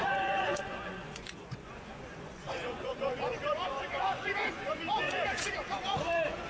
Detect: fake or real fake